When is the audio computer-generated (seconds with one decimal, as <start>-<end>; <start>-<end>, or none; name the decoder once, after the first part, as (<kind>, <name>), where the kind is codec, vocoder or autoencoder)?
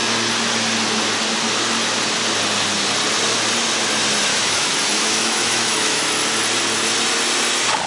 4.3-6.1 (autoencoder, DAC-VAE)